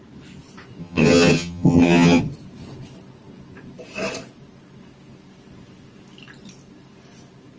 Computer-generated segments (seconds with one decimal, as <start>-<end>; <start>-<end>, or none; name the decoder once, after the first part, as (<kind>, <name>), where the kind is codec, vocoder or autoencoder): 0.8-2.2 (vocoder, HiFi-GAN)